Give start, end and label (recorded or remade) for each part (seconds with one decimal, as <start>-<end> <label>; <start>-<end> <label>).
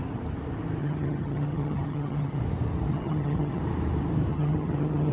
0.0-0.8 recorded; 0.8-2.4 remade; 2.4-2.9 recorded; 2.9-3.6 remade; 3.6-4.3 recorded; 4.3-5.1 remade